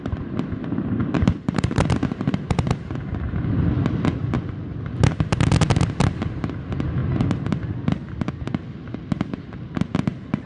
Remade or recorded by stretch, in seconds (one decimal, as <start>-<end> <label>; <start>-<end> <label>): 0.0-1.0 recorded; 1.0-3.3 remade; 3.3-10.5 recorded